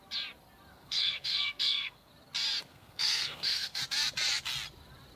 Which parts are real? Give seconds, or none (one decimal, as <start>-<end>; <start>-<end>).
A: 0.0-0.7; 2.1-2.7; 3.8-5.2